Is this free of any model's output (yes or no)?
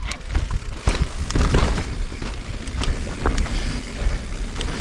yes